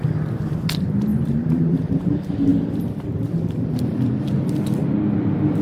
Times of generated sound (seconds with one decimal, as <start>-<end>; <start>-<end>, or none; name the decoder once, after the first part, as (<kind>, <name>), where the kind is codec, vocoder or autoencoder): 1.1-2.0 (vocoder, BigVGAN v2); 2.5-4.5